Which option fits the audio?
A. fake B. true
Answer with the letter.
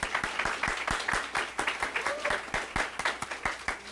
B